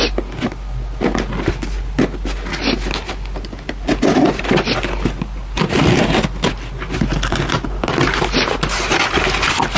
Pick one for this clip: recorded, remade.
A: recorded